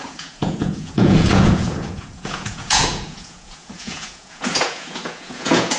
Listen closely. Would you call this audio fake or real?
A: fake